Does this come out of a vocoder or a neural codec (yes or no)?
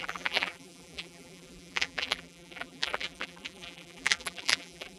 yes